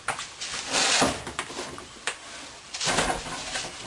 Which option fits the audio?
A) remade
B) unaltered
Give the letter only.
B